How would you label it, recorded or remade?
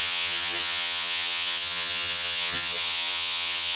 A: remade